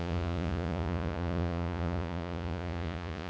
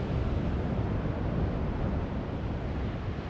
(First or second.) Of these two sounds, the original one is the second